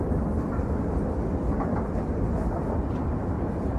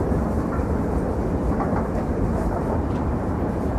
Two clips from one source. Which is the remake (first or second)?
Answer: second